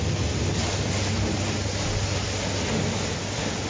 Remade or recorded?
recorded